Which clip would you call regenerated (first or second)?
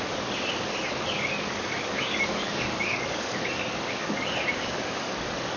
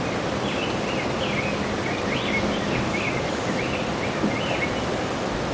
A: first